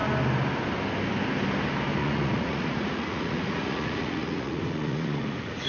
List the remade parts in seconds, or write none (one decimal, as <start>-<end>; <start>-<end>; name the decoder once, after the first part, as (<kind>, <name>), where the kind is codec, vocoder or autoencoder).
2.0-5.7 (vocoder, Vocos)